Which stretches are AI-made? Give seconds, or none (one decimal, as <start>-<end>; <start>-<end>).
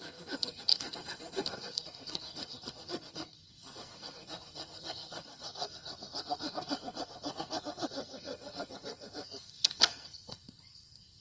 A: 0.0-11.2